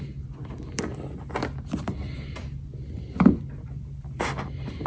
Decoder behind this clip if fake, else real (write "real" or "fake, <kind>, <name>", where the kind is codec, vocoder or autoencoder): real